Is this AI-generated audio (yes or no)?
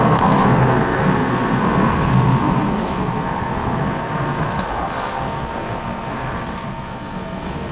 yes